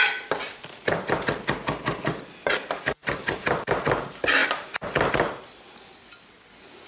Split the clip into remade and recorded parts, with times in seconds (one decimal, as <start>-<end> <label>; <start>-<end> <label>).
0.0-6.9 recorded